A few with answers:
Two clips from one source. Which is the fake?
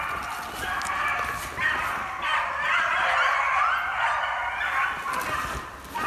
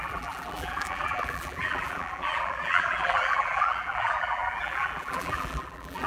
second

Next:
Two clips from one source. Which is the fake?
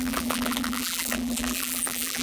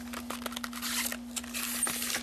first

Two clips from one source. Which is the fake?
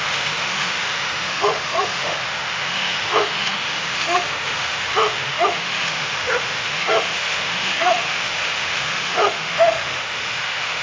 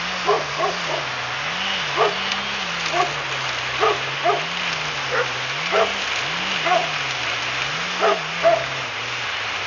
first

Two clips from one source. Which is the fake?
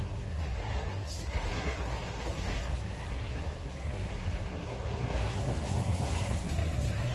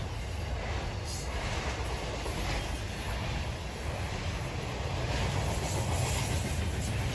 first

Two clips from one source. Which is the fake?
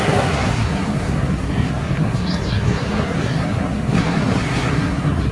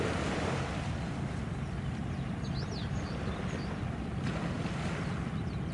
first